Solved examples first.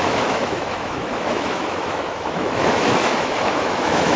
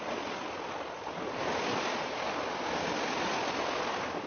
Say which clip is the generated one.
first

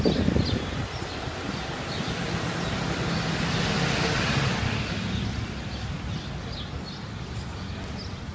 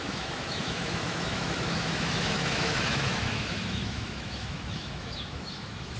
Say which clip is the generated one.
second